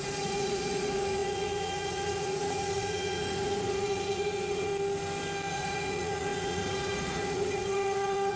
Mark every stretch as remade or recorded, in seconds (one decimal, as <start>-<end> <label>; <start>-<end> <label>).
0.0-4.7 remade; 4.7-5.5 recorded; 5.5-8.4 remade